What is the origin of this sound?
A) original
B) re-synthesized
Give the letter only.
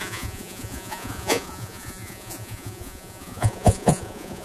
B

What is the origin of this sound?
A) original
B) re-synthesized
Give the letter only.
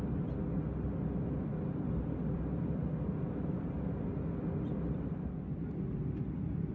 A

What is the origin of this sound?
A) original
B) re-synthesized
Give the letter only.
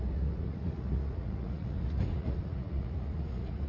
B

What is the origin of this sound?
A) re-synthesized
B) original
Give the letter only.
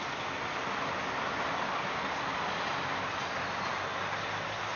B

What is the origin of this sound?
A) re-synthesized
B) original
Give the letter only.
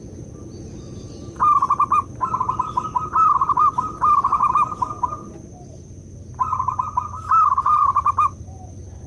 B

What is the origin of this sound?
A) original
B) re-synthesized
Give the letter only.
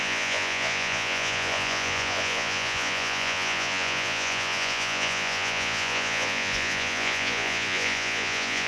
B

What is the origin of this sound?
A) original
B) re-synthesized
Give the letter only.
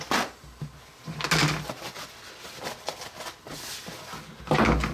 A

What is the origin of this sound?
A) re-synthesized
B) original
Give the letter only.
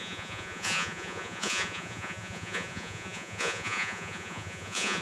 A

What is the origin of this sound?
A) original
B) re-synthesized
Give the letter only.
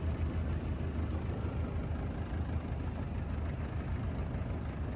A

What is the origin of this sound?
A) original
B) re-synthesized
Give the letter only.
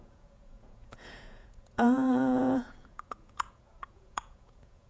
B